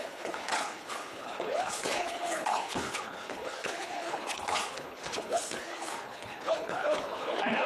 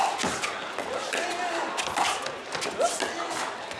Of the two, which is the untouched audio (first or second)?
second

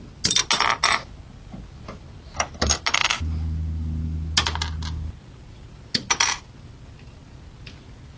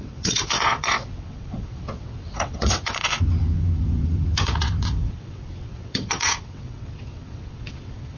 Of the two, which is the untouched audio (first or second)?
first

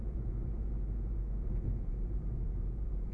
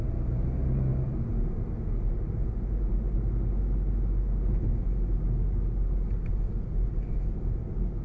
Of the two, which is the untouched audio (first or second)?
second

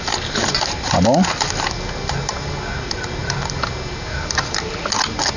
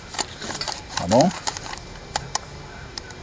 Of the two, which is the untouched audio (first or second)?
first